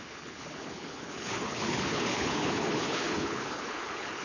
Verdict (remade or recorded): remade